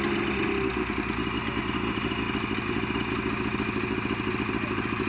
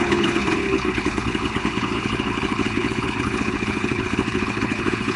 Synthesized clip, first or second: second